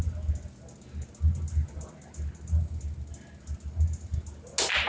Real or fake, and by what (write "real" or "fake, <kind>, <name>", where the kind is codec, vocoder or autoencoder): real